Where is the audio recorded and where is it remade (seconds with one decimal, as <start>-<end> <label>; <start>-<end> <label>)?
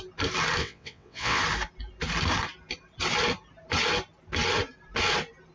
0.0-0.6 recorded; 0.6-1.4 remade; 1.4-5.5 recorded